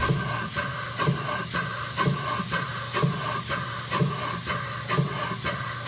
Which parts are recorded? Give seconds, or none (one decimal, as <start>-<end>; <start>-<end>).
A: 0.0-5.9